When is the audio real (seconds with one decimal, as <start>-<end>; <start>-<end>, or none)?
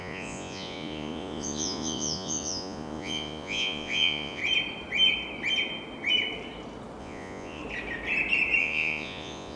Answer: 4.4-7.0; 7.6-8.6